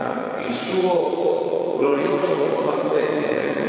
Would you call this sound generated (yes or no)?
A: yes